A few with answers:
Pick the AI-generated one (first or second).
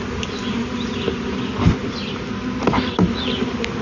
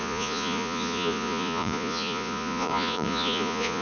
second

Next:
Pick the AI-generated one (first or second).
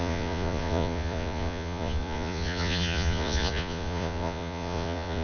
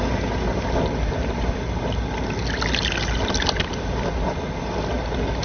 first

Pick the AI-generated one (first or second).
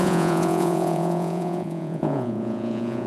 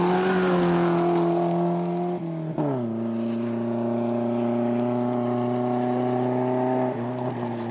first